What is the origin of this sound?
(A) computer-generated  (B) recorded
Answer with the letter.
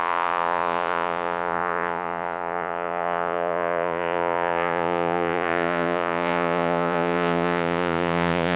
A